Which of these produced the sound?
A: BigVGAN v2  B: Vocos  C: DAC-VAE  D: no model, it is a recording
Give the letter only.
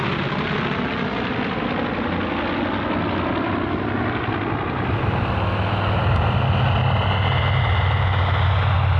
D